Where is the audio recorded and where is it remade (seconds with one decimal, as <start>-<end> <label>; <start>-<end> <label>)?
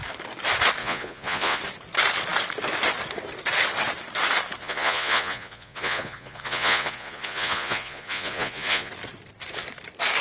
0.0-0.8 recorded; 0.8-1.6 remade; 1.6-4.6 recorded; 4.6-8.9 remade; 8.9-10.2 recorded